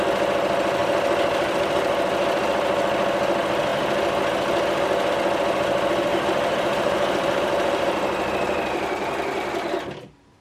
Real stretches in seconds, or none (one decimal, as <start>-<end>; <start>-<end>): 0.0-6.1; 8.3-10.4

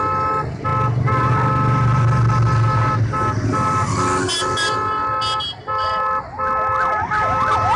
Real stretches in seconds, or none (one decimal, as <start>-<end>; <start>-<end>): 0.0-7.8

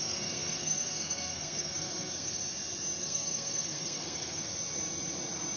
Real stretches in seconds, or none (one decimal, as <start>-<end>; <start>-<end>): 2.4-3.0; 4.5-5.6

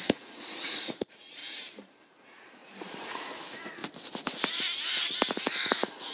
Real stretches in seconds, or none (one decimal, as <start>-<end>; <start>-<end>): 1.4-2.2; 3.8-5.3

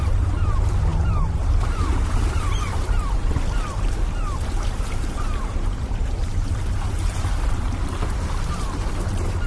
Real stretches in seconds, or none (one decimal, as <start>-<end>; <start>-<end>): none

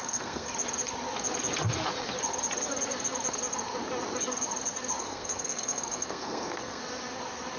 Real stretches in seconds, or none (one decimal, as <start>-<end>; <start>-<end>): 0.5-5.0; 6.8-7.6